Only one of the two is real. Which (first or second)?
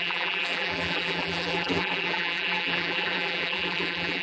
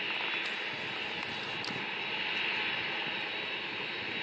second